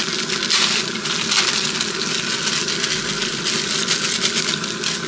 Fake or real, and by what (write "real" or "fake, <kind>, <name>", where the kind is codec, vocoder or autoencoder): real